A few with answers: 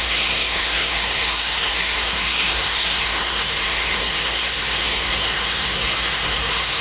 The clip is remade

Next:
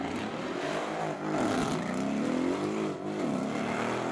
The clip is recorded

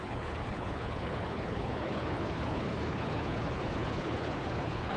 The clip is remade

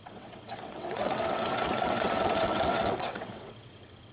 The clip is remade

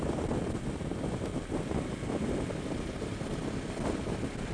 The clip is recorded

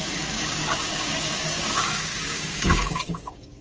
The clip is remade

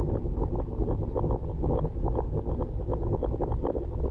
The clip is recorded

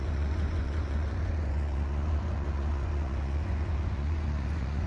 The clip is remade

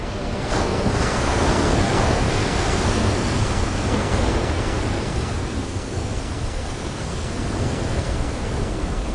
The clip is remade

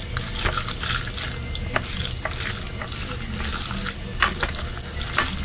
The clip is recorded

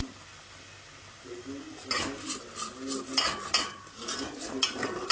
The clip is recorded